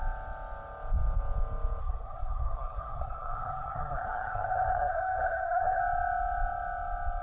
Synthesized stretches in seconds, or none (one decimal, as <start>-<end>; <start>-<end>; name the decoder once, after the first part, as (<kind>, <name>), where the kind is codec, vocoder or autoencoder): 1.8-5.8 (codec, SNAC)